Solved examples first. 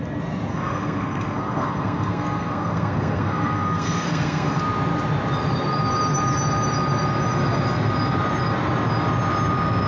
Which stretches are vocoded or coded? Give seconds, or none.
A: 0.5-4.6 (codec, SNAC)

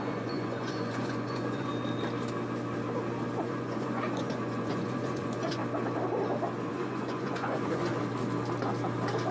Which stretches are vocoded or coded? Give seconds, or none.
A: 0.0-1.7 (vocoder, Vocos); 3.4-5.6; 6.7-7.9

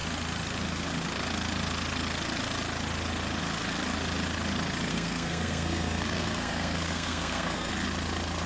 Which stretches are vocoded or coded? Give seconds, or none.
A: 4.9-7.7 (codec, SNAC)

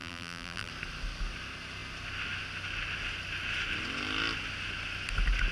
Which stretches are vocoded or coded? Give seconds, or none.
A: 0.0-0.7 (vocoder, BigVGAN v2)

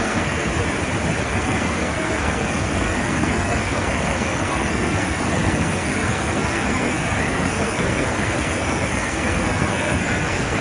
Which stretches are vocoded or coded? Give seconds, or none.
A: 0.0-0.5 (codec, SNAC); 1.2-10.6

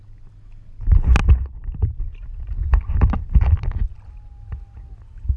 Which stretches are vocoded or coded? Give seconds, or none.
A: none